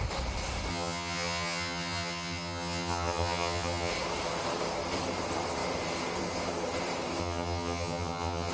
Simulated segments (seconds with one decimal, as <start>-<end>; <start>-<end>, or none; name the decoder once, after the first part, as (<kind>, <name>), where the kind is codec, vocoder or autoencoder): 0.7-3.9 (vocoder, HiFi-GAN); 7.2-8.5